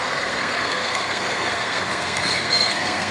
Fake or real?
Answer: fake